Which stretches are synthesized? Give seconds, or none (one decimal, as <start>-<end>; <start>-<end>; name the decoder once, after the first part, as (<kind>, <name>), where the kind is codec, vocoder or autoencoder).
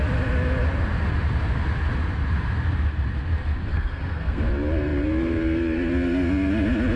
3.7-4.4 (codec, SNAC)